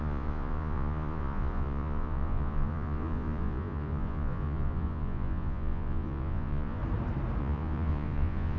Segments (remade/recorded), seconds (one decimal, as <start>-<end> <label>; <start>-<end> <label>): 0.0-6.8 remade; 6.8-7.4 recorded; 7.4-8.6 remade